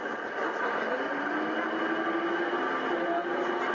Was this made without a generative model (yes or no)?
yes